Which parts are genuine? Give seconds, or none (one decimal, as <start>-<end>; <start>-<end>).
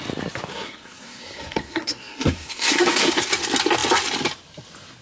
0.0-0.5; 3.3-5.0